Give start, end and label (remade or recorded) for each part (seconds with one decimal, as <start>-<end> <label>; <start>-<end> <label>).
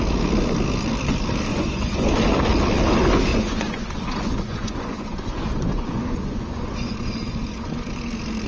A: 0.0-1.5 recorded; 1.5-2.1 remade; 2.1-3.3 recorded; 3.3-7.9 remade; 7.9-8.5 recorded